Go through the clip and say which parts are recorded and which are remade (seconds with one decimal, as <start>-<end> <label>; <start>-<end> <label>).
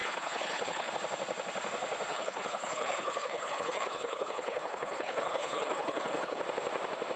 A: 0.0-0.9 remade; 0.9-2.1 recorded; 2.1-6.4 remade; 6.4-7.2 recorded